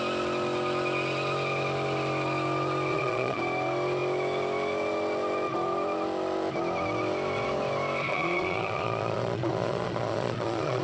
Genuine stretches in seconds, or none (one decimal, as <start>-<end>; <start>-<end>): 0.0-2.9; 3.4-8.1